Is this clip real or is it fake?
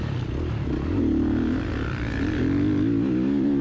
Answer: real